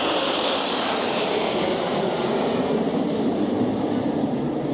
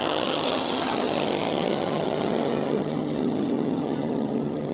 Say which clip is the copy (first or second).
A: second